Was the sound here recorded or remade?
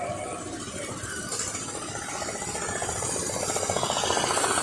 recorded